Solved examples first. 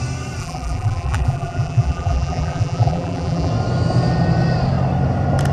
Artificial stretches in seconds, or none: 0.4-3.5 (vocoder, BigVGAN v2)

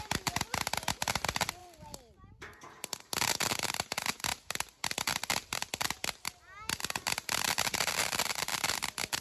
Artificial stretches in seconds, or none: 1.6-2.3 (vocoder, BigVGAN v2)

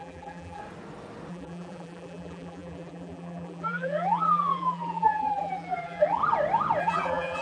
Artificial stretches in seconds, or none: 0.0-0.6 (vocoder, BigVGAN v2); 1.3-6.2; 6.8-7.4

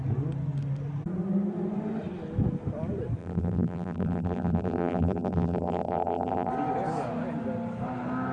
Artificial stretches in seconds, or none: 3.2-6.5 (vocoder, BigVGAN v2)

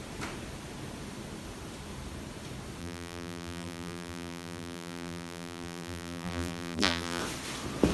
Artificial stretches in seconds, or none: 2.8-7.2 (vocoder, BigVGAN v2)

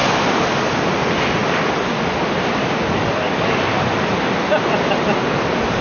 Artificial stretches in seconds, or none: none

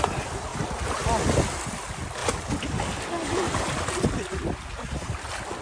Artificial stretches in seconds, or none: none